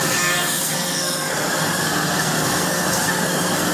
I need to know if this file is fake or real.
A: fake